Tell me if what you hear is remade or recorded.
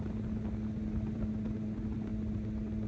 recorded